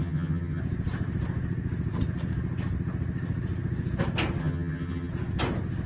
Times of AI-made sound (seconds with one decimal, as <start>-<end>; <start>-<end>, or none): 0.0-0.6; 4.4-5.1